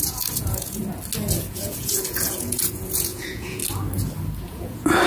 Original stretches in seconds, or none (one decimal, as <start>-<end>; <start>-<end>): 0.8-1.5; 3.6-4.5